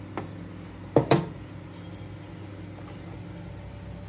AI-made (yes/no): no